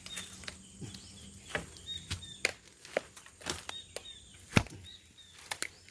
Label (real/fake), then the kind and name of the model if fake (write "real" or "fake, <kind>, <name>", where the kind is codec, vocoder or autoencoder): real